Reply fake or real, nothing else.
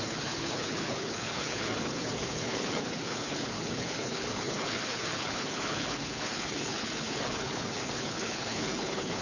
fake